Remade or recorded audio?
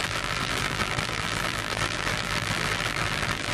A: remade